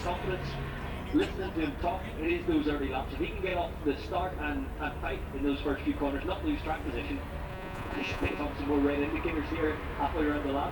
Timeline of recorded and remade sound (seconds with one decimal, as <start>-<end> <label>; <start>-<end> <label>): 0.0-7.5 recorded; 7.5-8.4 remade; 8.4-10.7 recorded